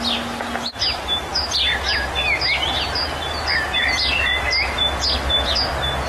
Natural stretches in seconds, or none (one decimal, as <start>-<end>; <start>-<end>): 0.0-6.1